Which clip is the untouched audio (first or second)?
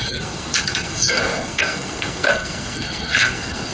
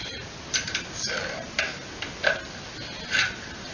second